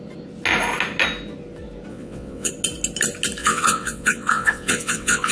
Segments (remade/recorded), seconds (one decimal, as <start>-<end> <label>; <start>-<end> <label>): 0.0-1.9 recorded; 1.9-2.5 remade; 2.5-3.4 recorded; 3.4-5.3 remade